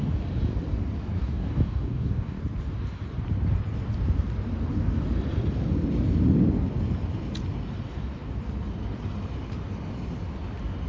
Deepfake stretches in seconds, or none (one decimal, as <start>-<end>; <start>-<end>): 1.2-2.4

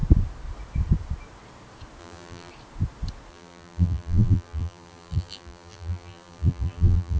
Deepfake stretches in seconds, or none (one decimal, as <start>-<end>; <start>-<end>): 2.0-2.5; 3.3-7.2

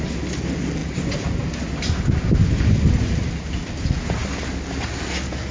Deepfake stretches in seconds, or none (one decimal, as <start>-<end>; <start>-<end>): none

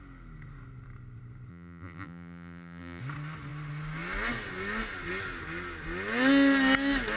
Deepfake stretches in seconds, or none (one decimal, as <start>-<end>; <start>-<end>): 1.5-3.0